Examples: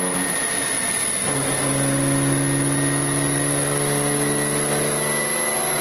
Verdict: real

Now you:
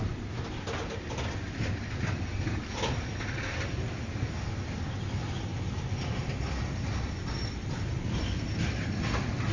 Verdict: real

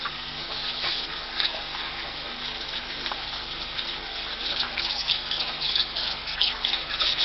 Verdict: fake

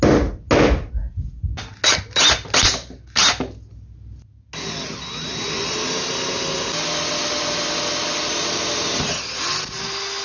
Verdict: real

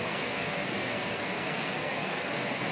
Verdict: fake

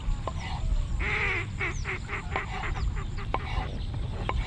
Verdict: real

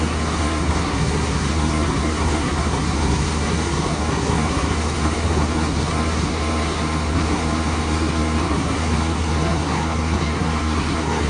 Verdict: fake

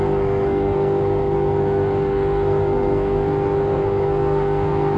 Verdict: fake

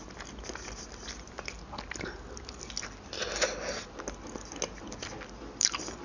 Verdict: real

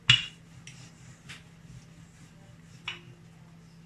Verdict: real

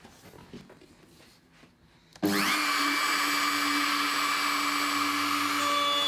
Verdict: real